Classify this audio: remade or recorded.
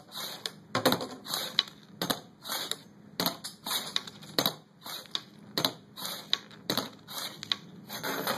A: recorded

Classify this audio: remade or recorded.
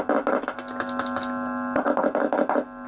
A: recorded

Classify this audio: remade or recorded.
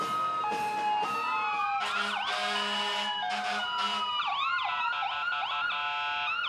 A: recorded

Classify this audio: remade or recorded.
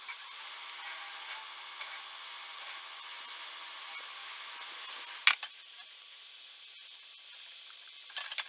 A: recorded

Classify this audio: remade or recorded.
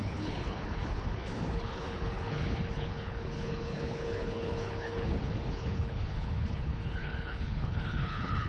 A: remade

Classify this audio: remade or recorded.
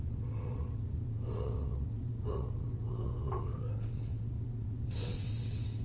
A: remade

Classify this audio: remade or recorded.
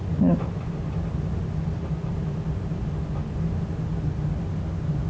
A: recorded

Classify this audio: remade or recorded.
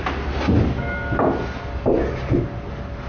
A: recorded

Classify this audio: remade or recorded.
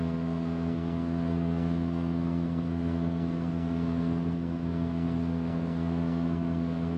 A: remade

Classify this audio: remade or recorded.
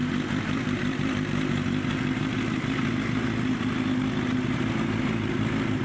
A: recorded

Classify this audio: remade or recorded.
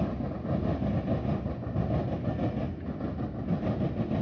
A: recorded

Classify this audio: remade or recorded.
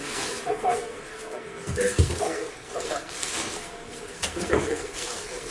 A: remade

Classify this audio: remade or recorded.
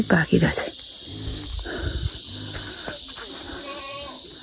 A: recorded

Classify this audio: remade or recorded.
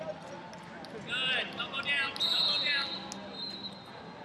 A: recorded